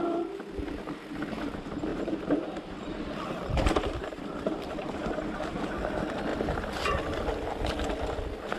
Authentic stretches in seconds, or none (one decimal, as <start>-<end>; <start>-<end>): 0.0-1.9; 5.4-8.6